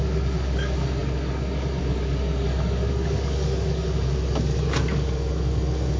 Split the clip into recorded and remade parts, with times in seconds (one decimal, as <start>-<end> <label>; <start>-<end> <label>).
0.0-6.0 remade